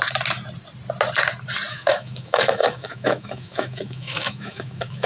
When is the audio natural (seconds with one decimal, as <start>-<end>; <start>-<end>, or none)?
0.0-1.7